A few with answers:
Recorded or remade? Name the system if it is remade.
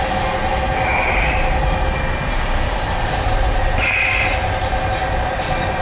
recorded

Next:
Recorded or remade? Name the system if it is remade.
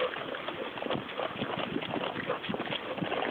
recorded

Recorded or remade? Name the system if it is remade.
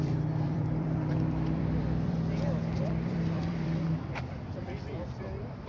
remade, vocoder, BigVGAN v2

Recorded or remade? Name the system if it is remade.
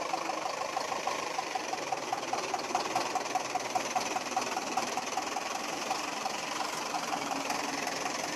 remade, vocoder, BigVGAN v2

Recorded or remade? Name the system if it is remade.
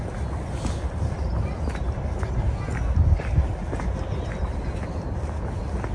recorded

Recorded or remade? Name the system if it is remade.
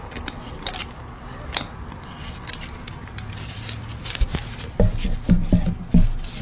recorded